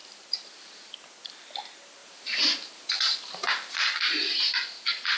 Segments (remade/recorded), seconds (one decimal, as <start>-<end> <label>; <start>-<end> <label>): 0.0-0.5 remade; 0.5-2.0 recorded; 2.0-4.0 remade; 4.0-5.2 recorded